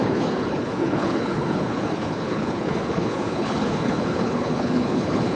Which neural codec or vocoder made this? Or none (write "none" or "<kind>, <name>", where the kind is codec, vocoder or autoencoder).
codec, HILCodec